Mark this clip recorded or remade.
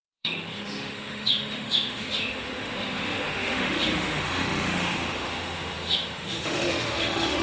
remade